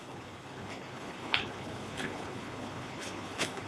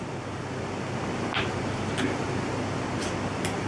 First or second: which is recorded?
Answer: second